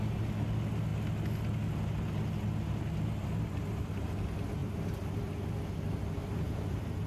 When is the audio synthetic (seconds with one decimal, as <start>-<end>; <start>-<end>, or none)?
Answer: 6.2-7.1